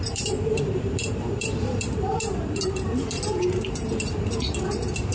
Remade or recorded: remade